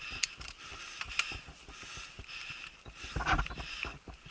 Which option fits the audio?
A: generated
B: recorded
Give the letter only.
B